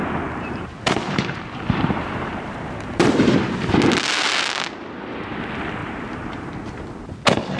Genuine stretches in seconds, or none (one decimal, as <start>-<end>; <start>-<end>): 3.4-5.8; 6.5-7.6